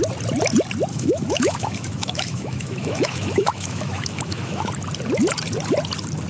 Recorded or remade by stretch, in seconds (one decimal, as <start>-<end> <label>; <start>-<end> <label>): 0.0-0.9 recorded; 0.9-4.7 remade; 4.7-6.3 recorded